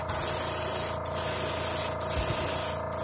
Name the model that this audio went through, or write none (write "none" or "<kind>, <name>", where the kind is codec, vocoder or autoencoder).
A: none